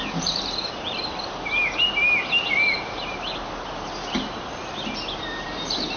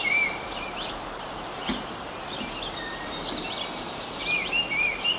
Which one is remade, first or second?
second